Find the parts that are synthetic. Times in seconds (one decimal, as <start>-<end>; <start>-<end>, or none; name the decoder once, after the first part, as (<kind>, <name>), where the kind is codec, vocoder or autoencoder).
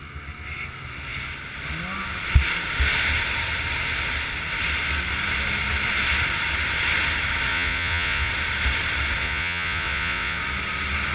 7.5-8.3 (vocoder, Vocos); 9.2-10.4